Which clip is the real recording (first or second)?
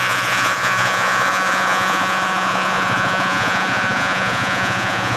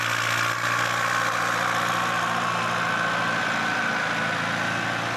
second